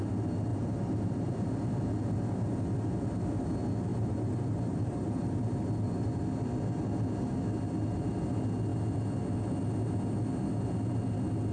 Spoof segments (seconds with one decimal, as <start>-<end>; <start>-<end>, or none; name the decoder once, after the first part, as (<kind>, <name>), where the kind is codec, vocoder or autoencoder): 0.5-1.3 (vocoder, BigVGAN v2); 3.9-5.5